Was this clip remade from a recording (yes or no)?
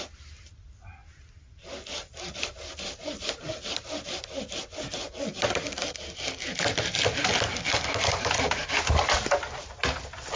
no